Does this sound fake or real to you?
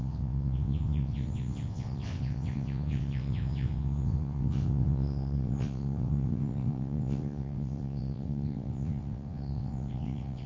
fake